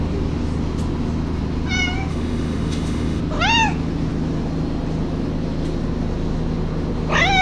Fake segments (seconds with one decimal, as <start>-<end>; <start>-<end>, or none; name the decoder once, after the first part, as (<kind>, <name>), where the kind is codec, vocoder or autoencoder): 2.1-3.2 (autoencoder, DAC-VAE)

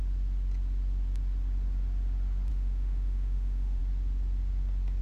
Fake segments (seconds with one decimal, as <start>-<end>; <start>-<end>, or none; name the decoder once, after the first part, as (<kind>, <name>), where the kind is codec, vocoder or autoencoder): 2.5-3.8 (autoencoder, DAC-VAE)

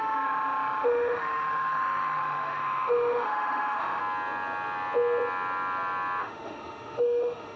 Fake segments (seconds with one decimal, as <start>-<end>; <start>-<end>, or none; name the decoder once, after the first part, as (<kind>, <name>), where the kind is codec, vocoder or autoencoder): 0.0-4.0 (autoencoder, DAC-VAE); 6.2-7.6

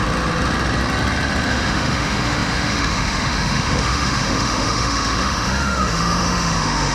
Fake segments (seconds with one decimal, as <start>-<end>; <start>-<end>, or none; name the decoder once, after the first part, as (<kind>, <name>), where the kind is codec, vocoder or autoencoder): 1.5-6.9 (autoencoder, DAC-VAE)

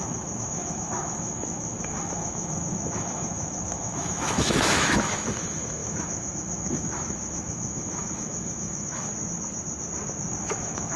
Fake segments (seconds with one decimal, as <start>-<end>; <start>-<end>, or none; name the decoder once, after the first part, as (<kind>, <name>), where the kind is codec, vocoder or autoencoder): 0.0-9.1 (autoencoder, DAC-VAE); 10.4-11.0